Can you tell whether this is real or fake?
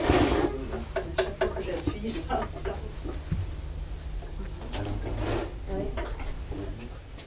real